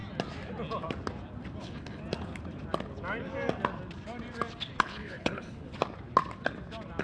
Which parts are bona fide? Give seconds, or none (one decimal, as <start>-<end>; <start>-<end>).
0.0-1.6; 2.0-4.8; 5.7-7.0